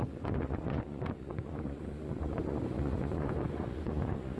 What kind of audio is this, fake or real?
fake